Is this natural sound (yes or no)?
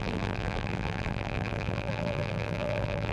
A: no